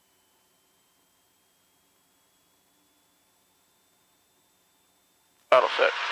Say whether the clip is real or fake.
fake